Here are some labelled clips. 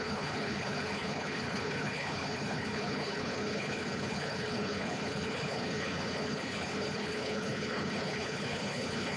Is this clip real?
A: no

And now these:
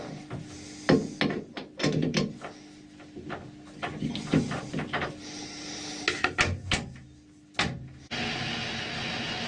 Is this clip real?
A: yes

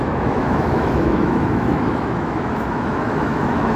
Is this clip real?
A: no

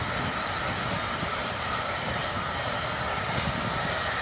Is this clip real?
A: yes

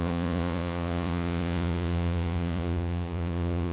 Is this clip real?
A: no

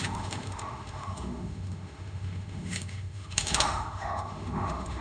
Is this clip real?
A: no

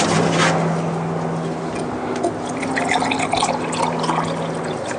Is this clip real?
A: yes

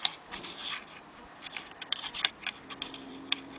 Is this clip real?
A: no